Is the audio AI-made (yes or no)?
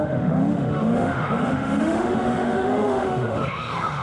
yes